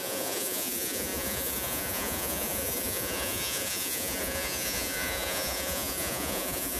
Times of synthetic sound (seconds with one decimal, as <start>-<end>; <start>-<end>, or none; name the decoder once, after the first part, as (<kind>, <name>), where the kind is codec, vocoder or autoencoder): 0.0-6.8 (vocoder, Vocos)